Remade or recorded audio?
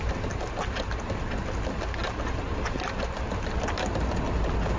recorded